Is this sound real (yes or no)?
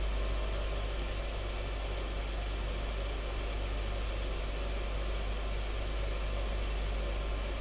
yes